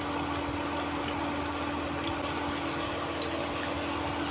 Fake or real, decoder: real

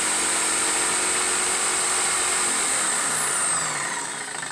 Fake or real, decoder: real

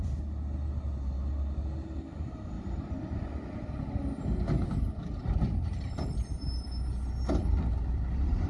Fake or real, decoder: real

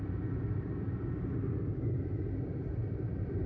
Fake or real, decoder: real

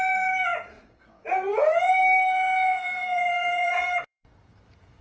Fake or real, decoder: fake, vocoder, Vocos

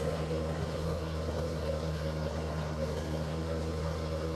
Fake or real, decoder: fake, codec, SNAC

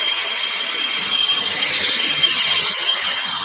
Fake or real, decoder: fake, vocoder, HiFi-GAN